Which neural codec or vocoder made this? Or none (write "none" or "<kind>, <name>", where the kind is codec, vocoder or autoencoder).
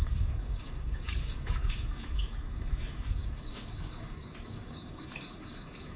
codec, DAC